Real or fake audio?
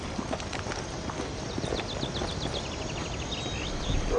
real